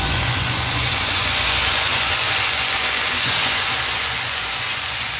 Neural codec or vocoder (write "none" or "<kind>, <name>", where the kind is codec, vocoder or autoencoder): vocoder, Vocos